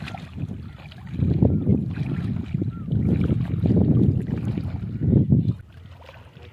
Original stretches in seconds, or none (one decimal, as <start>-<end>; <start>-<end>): 0.0-6.5